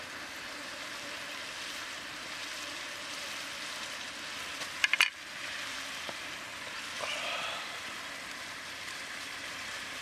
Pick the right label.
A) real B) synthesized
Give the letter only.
A